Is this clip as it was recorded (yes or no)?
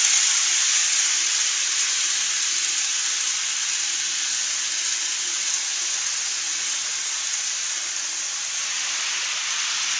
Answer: yes